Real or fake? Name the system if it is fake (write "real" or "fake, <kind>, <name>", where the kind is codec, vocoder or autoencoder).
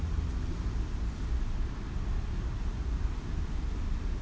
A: real